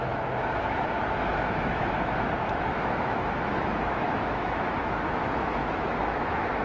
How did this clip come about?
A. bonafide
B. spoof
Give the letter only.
B